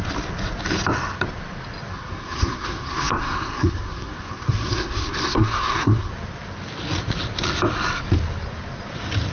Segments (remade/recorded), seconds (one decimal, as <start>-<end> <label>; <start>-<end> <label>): 0.0-1.9 recorded; 1.9-6.1 remade; 6.1-9.3 recorded

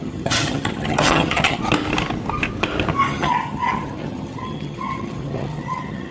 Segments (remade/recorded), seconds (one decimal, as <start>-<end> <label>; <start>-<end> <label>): 0.0-1.6 remade; 1.6-3.1 recorded; 3.1-6.1 remade

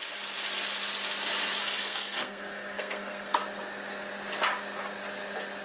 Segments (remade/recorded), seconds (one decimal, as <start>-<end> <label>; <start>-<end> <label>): 0.0-1.6 recorded; 1.6-3.4 remade; 3.4-5.6 recorded

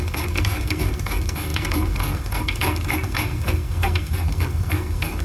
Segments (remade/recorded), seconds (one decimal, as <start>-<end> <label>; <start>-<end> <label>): 0.0-5.2 remade